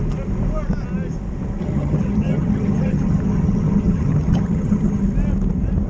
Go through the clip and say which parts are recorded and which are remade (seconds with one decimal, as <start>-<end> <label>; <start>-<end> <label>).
0.0-1.6 recorded; 1.6-5.0 remade; 5.0-5.9 recorded